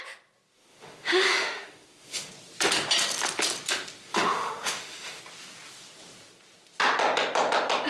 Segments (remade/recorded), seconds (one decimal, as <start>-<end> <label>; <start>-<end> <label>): 0.0-0.5 recorded; 0.5-2.3 remade; 2.3-4.1 recorded; 4.1-5.2 remade; 5.2-7.9 recorded